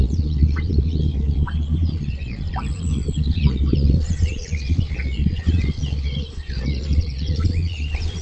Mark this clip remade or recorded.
remade